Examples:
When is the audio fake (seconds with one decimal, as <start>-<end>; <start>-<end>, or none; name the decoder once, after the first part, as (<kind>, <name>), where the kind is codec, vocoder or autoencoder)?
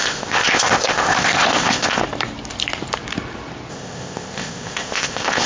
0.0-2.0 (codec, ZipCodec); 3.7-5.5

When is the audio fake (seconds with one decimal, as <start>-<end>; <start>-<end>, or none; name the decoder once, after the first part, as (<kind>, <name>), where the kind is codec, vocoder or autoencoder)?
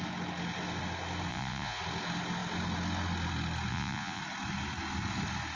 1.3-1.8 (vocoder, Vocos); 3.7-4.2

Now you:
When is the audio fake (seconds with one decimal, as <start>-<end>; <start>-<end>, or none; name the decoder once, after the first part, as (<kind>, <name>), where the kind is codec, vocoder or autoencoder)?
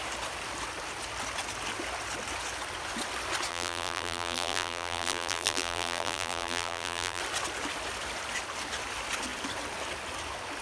3.5-7.2 (vocoder, BigVGAN v2)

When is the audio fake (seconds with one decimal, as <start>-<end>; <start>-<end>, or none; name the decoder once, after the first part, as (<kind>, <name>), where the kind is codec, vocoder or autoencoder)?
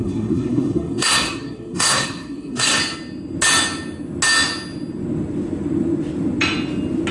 0.0-2.8 (codec, SNAC)